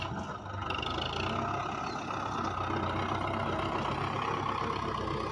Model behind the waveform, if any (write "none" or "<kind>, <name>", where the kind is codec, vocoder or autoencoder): none